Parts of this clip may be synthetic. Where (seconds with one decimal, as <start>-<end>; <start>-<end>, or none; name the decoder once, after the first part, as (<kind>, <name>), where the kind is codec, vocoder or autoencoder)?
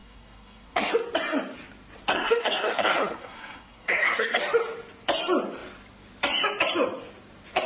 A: 0.0-0.9 (codec, SNAC); 2.1-4.4